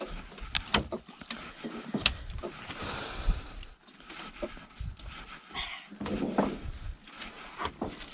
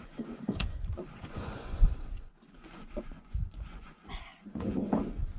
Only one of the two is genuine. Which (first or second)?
first